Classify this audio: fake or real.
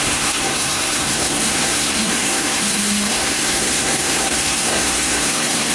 fake